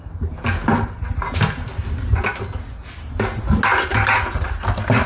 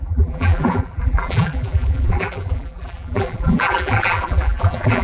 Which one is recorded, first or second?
first